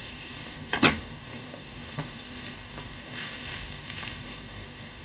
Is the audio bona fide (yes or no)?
no